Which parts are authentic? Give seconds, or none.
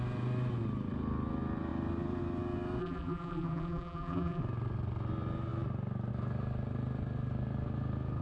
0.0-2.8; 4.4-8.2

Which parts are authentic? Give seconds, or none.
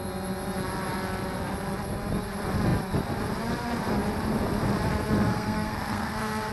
0.0-5.3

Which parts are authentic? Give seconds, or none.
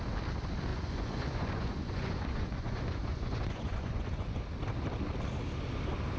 0.0-0.7; 4.4-6.2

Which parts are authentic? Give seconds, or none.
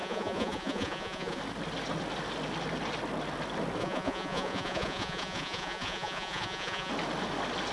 1.4-3.8; 6.9-7.7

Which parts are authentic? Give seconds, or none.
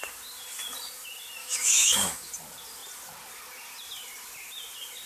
0.0-1.4; 2.3-5.1